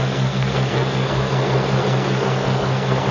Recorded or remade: remade